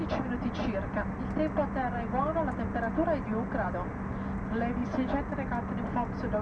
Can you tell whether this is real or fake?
real